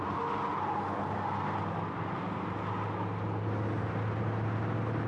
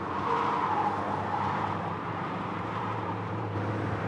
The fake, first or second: second